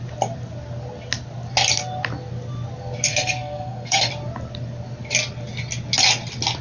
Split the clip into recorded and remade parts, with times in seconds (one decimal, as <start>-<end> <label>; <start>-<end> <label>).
0.0-3.1 recorded; 3.1-4.1 remade; 4.1-6.6 recorded